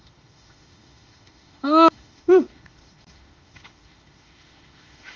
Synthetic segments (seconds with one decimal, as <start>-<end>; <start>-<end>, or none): 0.0-5.2